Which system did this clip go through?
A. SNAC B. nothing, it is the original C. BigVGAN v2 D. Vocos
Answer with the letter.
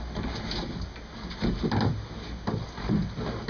B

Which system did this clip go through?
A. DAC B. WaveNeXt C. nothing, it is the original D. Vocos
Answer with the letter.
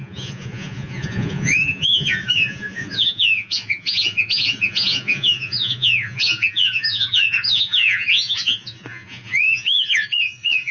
D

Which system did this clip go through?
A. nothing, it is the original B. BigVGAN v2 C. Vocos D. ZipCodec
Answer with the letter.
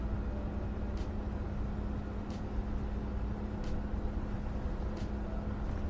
A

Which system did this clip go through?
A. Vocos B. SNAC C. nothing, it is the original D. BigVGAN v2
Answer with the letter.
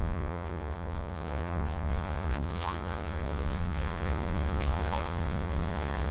A